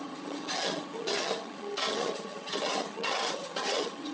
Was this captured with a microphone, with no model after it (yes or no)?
no